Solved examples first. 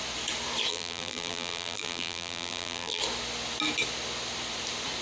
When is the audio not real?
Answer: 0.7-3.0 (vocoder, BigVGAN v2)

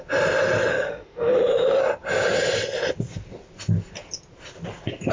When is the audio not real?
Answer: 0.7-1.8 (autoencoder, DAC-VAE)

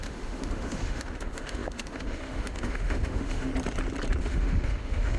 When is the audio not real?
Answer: 0.0-3.5 (autoencoder, DAC-VAE); 4.2-5.2

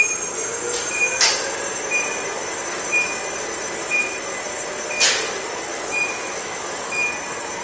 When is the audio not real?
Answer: 5.7-7.0 (autoencoder, DAC-VAE)